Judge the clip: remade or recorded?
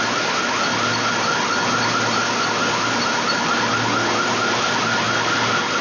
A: recorded